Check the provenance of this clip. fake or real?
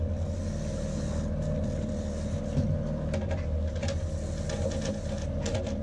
real